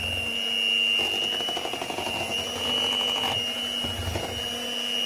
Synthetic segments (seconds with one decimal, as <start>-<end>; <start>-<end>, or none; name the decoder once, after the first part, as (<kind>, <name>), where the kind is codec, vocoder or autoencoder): none